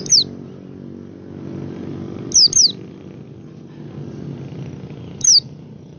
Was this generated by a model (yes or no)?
no